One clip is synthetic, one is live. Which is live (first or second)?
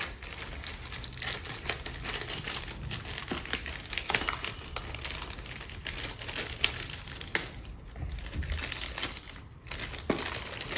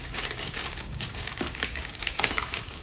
first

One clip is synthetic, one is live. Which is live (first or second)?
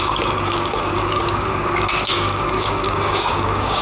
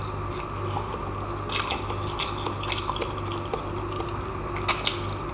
second